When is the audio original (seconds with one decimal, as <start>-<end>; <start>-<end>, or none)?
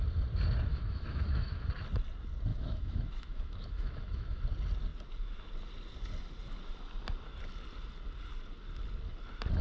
0.0-0.7; 1.7-2.5; 4.4-9.6